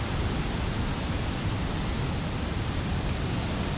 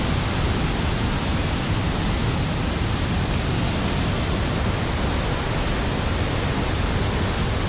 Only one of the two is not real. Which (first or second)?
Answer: first